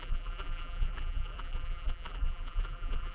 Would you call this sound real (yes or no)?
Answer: no